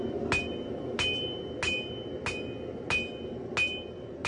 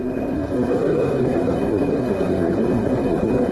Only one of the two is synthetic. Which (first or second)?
second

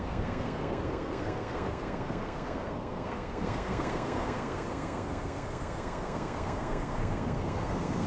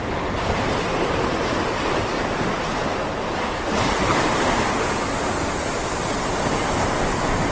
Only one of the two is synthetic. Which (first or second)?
first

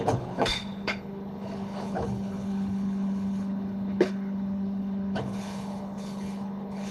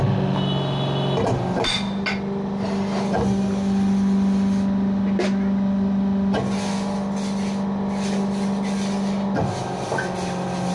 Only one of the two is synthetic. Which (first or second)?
first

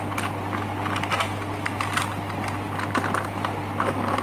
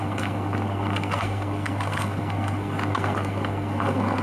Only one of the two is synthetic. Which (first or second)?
second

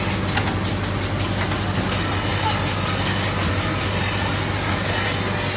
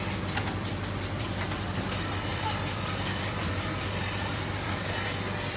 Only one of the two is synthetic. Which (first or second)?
second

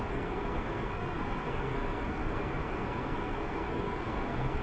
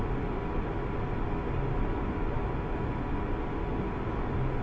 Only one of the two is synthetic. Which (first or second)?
first